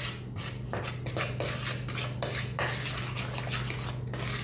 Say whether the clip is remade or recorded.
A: recorded